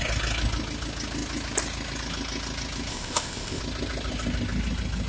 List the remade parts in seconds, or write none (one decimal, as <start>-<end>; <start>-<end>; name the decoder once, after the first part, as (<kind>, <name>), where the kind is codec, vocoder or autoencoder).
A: 2.9-3.6 (codec, ZipCodec)